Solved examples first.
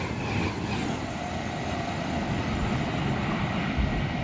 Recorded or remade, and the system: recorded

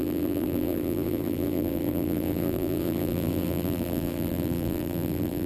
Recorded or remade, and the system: remade, vocoder, BigVGAN v2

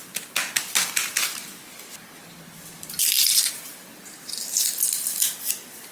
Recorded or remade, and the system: recorded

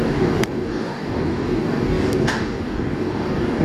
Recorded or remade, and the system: remade, codec, DAC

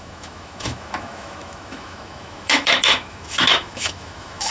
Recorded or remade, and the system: remade, autoencoder, DAC-VAE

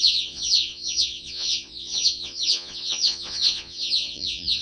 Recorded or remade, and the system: remade, vocoder, Vocos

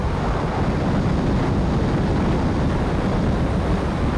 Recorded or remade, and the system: recorded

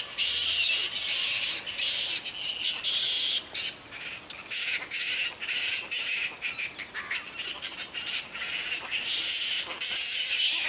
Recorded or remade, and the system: recorded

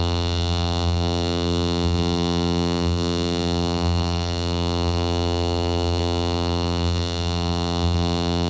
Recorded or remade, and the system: remade, vocoder, BigVGAN v2